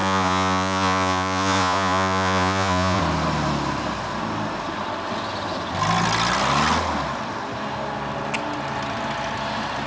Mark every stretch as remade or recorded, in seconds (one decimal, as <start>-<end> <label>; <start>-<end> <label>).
0.0-3.0 remade; 3.0-9.9 recorded